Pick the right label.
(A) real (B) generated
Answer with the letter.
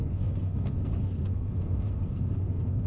B